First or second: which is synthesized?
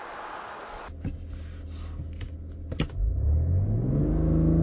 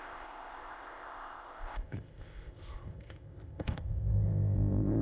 second